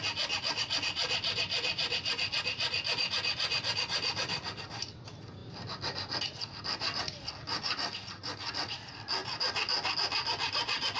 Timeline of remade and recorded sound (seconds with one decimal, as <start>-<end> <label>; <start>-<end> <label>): 0.0-11.0 recorded